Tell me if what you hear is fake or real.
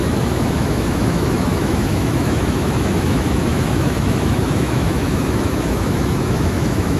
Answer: fake